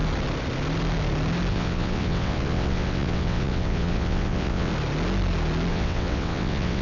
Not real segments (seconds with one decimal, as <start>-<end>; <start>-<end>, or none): 1.5-4.7; 5.7-6.8